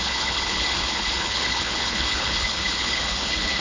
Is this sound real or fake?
fake